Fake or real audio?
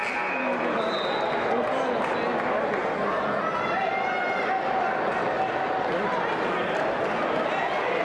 real